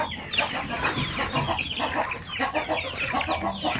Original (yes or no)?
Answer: yes